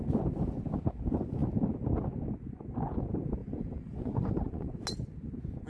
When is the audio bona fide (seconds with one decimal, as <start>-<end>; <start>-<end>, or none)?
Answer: 0.0-3.4; 4.8-5.7